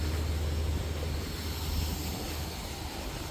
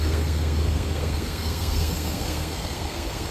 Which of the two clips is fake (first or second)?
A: second